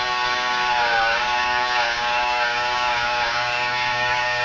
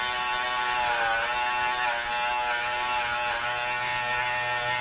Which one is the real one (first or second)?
second